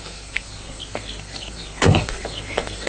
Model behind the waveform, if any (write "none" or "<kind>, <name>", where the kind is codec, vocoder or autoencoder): codec, SNAC